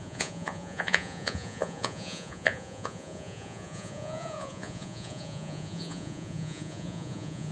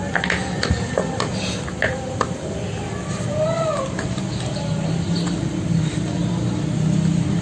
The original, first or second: second